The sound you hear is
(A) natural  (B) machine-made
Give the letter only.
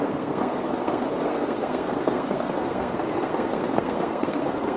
B